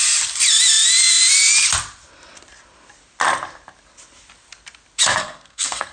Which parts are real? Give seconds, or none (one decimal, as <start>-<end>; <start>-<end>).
0.0-5.2